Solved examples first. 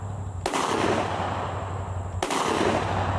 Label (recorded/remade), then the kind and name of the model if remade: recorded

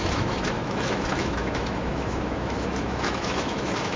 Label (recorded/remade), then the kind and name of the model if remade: remade, autoencoder, DAC-VAE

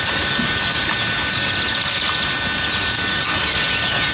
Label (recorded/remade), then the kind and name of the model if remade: recorded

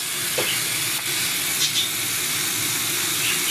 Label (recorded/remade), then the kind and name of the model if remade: recorded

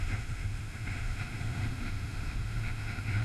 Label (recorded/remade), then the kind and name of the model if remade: remade, autoencoder, DAC-VAE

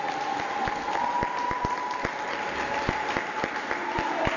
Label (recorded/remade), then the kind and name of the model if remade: recorded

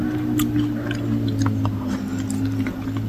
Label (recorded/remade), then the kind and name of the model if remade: recorded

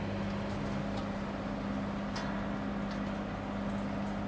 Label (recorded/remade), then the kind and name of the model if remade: recorded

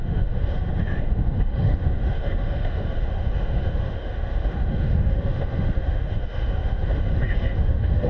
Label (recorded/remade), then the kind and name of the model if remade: remade, autoencoder, DAC-VAE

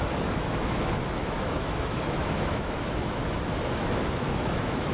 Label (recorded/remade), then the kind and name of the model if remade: remade, autoencoder, DAC-VAE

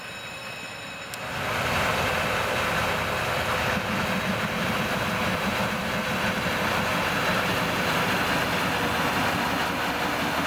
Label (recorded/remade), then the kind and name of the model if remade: recorded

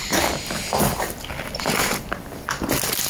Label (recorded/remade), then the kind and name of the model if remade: recorded